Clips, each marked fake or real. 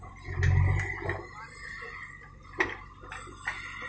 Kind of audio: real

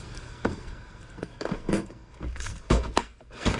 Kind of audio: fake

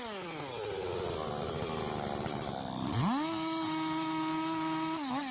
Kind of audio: real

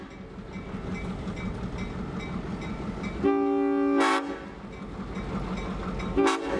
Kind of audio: real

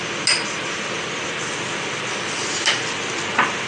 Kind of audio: real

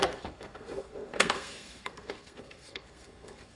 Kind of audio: fake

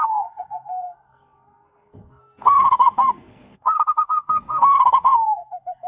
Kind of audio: fake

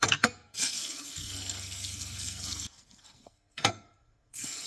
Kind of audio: fake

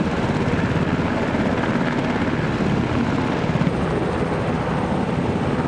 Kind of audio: real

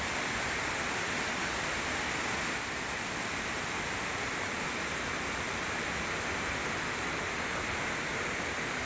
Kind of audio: real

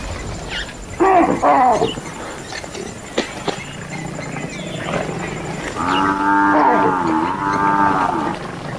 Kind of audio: real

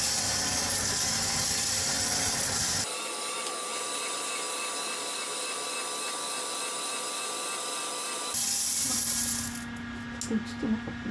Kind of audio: real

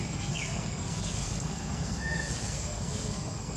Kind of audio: fake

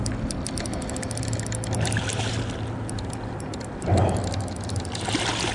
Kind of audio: real